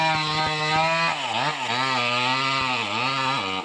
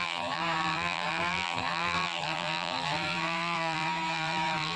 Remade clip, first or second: second